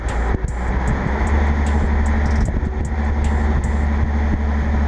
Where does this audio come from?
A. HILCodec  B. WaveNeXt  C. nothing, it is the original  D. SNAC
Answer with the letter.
C